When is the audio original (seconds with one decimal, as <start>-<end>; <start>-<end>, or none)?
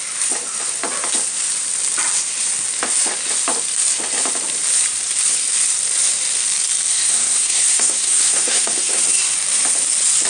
0.0-6.9; 9.0-10.3